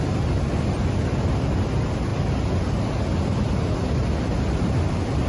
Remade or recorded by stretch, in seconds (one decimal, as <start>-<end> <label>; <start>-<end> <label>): 0.0-5.3 recorded